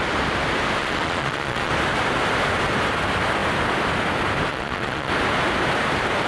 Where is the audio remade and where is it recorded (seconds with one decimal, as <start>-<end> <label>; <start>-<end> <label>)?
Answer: 0.0-0.8 recorded; 0.8-1.7 remade; 1.7-4.5 recorded; 4.5-5.1 remade; 5.1-6.3 recorded